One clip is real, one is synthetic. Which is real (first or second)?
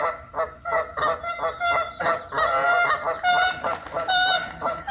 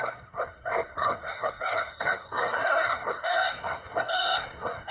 first